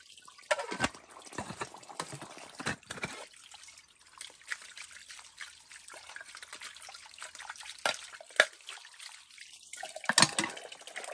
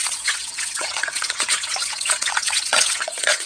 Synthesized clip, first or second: second